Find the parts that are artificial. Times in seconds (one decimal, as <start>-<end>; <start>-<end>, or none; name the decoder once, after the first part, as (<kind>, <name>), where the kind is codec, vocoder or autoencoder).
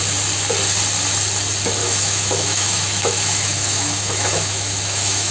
1.8-5.3 (autoencoder, DAC-VAE)